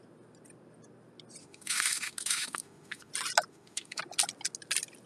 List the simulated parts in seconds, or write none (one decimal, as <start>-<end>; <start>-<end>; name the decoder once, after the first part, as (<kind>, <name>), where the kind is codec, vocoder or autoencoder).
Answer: 1.4-3.1 (autoencoder, DAC-VAE); 3.5-4.0